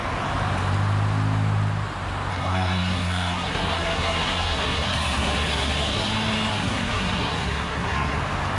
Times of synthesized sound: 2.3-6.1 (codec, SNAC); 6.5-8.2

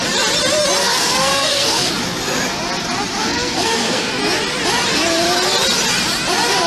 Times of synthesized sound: 0.8-1.9 (codec, SNAC); 3.2-4.1

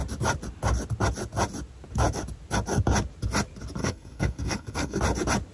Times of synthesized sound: 3.8-5.0 (codec, SNAC)

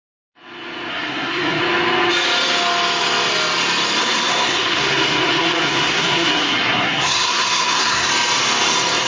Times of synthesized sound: 0.9-1.6 (codec, SNAC); 4.0-8.1

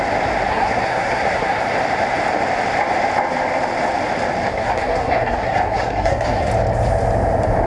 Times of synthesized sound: 0.5-1.6 (codec, SNAC); 4.5-6.5

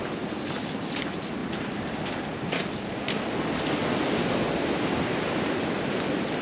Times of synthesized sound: none

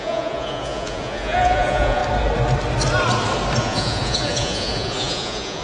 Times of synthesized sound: 0.0-2.0 (vocoder, Vocos); 3.6-5.6